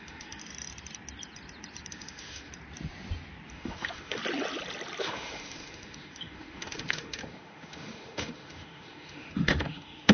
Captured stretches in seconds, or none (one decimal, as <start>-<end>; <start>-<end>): 0.4-1.9; 2.5-3.5; 4.2-5.0